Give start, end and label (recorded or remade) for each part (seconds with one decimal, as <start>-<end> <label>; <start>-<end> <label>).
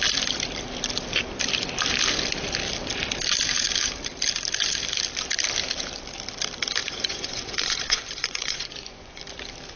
0.0-6.8 recorded; 6.8-9.2 remade; 9.2-9.8 recorded